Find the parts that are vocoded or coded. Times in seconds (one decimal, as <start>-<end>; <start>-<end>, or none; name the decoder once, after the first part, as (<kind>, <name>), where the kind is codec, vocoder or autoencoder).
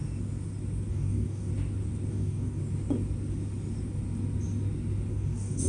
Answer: 0.9-1.5 (codec, DAC); 2.1-2.6; 5.1-5.7